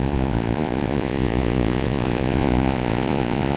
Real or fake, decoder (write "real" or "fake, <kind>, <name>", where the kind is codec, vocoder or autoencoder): fake, vocoder, Vocos